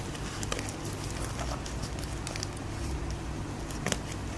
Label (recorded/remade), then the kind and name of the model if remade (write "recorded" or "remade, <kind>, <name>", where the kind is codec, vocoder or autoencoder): recorded